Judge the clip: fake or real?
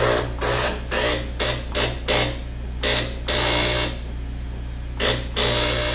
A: real